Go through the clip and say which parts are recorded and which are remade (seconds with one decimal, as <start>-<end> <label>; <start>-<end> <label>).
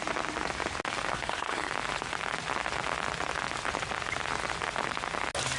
0.0-1.1 recorded; 1.1-1.7 remade; 1.7-5.6 recorded